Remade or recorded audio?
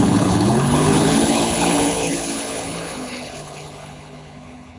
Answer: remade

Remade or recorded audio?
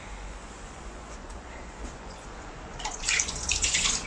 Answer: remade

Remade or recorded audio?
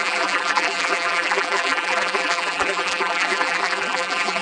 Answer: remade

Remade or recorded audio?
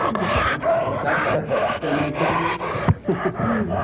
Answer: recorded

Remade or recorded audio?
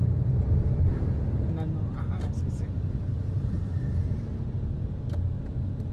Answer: recorded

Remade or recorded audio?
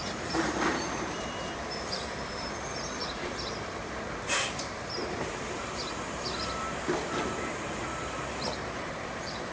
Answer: remade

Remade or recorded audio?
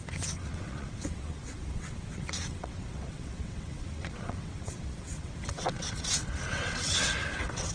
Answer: remade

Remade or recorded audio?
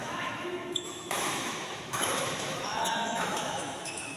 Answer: remade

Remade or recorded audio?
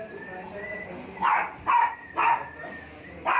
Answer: recorded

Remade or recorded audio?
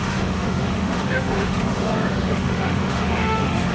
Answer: remade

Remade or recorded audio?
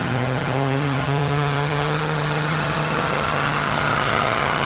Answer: remade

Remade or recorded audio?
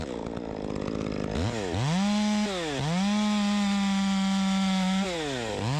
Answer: recorded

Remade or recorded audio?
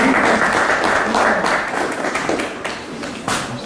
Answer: recorded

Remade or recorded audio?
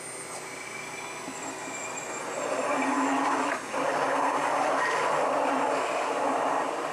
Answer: recorded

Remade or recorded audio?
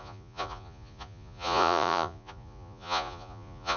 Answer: remade